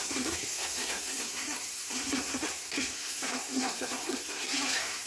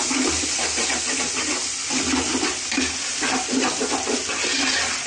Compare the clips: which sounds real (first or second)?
second